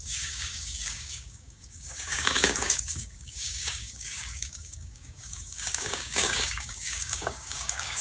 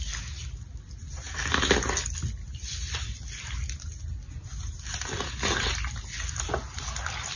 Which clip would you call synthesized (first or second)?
first